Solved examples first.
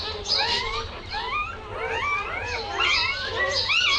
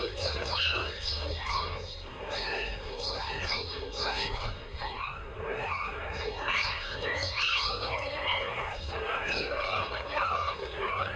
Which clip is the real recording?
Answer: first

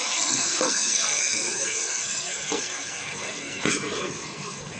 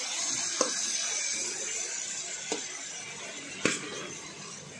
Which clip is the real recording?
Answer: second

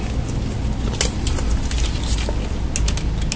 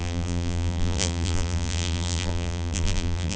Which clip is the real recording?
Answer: first